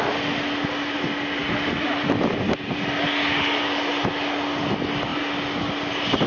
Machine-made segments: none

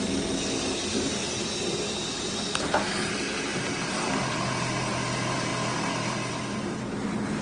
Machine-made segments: none

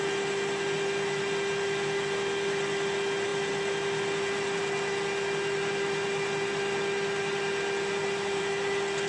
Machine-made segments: none

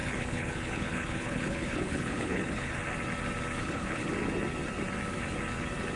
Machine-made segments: 0.0-2.7; 3.6-4.1